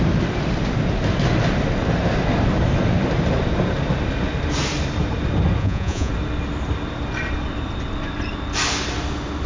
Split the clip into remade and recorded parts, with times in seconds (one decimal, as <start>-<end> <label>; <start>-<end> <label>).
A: 0.0-5.6 recorded; 5.6-6.1 remade; 6.1-9.5 recorded